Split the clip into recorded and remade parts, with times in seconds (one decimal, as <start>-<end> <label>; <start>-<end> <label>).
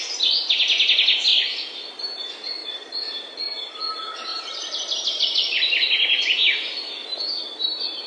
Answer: 0.0-1.3 recorded; 1.3-1.9 remade; 1.9-4.3 recorded; 4.3-5.7 remade; 5.7-8.1 recorded